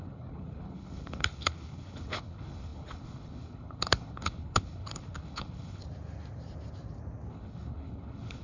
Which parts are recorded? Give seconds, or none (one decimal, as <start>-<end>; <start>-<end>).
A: 5.8-7.3